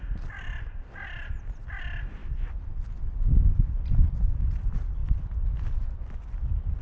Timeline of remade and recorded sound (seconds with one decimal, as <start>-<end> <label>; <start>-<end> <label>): 0.0-6.8 remade